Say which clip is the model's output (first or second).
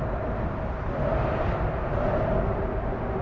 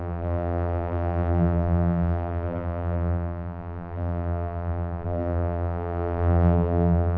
second